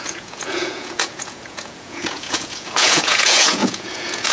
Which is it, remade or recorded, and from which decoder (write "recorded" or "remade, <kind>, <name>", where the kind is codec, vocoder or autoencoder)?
remade, vocoder, Vocos